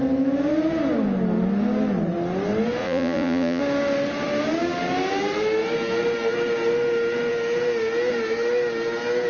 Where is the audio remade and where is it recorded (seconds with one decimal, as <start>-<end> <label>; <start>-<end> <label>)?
0.0-2.8 recorded; 2.8-3.6 remade; 3.6-9.3 recorded